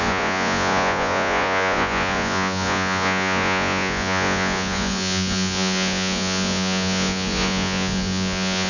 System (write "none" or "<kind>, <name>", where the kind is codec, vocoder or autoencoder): vocoder, Vocos